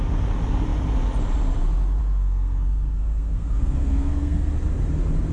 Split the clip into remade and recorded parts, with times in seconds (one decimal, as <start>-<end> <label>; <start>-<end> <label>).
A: 0.0-2.0 recorded; 2.0-4.5 remade; 4.5-5.3 recorded